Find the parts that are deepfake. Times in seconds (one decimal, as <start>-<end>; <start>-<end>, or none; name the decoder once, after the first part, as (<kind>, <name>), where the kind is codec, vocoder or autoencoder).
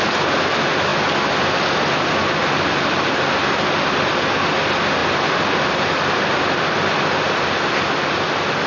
5.0-7.8 (vocoder, BigVGAN v2)